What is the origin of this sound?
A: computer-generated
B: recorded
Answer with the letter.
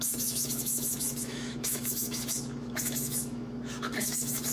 A